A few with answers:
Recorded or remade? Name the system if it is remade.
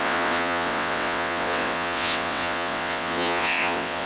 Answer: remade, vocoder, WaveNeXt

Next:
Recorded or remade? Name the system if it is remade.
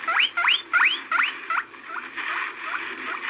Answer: recorded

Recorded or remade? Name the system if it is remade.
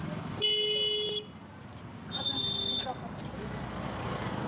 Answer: recorded